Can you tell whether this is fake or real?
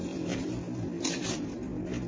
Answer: real